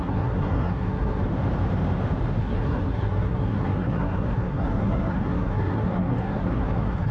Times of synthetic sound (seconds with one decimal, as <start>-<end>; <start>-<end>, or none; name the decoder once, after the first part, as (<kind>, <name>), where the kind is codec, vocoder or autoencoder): 0.0-1.2 (codec, SNAC); 2.4-7.1

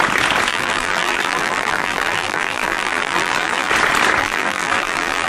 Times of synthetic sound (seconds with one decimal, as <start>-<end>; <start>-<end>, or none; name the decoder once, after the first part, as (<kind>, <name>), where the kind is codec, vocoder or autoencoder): 0.5-3.7 (vocoder, BigVGAN v2); 4.2-5.3

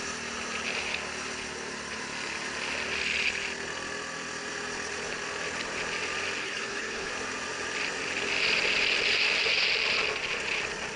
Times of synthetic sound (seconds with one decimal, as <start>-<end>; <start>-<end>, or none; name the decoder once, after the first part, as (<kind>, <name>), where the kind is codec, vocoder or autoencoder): 6.4-7.1 (codec, HILCodec)

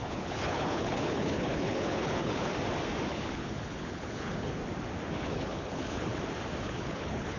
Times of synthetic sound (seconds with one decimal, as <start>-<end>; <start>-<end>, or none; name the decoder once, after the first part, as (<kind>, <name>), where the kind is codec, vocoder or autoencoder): 0.0-2.5 (codec, HILCodec); 3.1-4.6; 5.2-6.1; 6.6-7.4

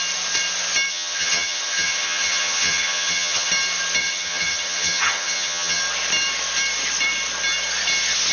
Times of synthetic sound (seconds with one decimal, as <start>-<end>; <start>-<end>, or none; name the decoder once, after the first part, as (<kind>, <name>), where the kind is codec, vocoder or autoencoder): 0.9-3.5 (vocoder, HiFi-GAN); 4.0-5.8

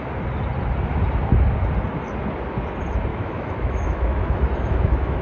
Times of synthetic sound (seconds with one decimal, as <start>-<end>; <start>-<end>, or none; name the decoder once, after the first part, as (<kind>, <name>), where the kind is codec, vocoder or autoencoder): 3.1-5.2 (autoencoder, DAC-VAE)